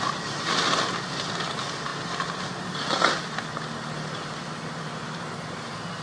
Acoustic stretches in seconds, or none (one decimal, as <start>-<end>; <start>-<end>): 0.0-6.0

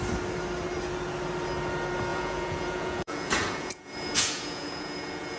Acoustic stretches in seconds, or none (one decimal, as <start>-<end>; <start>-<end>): 0.0-2.1

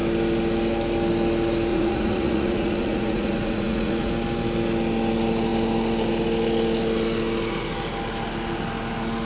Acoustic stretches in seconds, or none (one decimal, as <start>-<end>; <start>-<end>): 0.0-1.7; 4.1-9.3

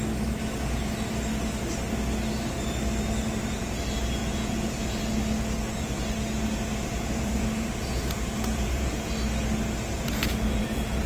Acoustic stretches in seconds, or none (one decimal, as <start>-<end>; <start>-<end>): 0.0-4.2; 5.0-5.6; 6.1-6.7; 9.1-9.9

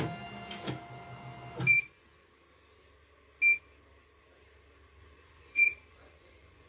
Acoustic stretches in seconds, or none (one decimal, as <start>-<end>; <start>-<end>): 0.0-1.7; 2.3-5.0